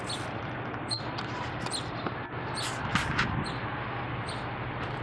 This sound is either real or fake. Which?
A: real